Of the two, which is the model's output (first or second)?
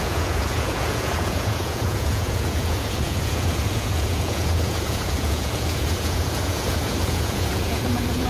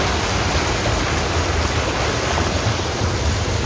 first